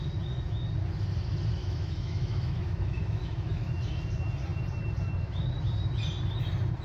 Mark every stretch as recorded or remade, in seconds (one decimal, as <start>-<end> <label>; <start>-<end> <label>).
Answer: 0.0-1.6 recorded; 1.6-3.7 remade; 3.7-6.8 recorded